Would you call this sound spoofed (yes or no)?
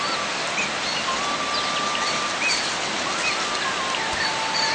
no